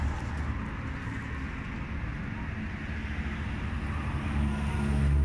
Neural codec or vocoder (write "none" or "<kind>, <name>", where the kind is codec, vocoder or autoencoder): none